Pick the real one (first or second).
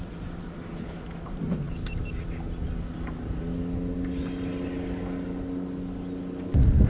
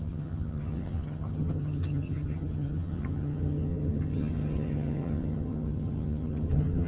first